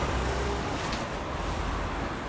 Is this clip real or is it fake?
fake